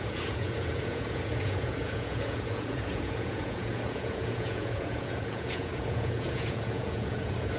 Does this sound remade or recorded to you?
remade